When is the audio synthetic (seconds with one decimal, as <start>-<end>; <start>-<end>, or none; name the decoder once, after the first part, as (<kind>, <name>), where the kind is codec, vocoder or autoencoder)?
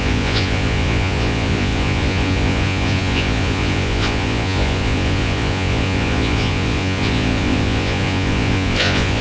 0.0-9.2 (vocoder, Vocos)